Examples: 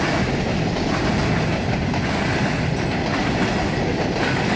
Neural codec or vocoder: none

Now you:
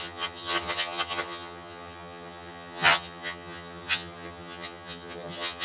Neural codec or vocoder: vocoder, HiFi-GAN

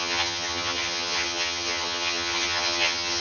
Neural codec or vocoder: vocoder, HiFi-GAN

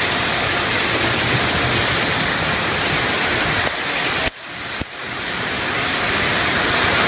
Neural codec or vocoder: none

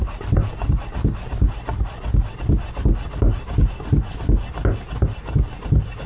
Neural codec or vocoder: none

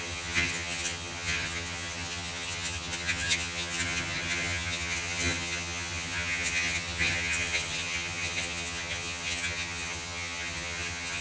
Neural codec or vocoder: vocoder, HiFi-GAN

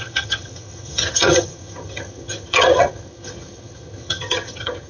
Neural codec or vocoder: vocoder, HiFi-GAN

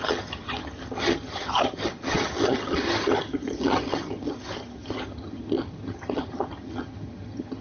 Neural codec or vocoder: vocoder, HiFi-GAN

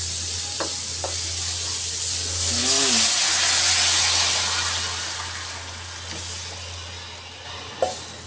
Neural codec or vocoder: none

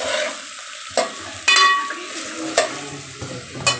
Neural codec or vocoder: none